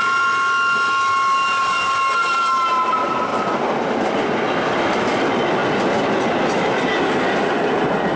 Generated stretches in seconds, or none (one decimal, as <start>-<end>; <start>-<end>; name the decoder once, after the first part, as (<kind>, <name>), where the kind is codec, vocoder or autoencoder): none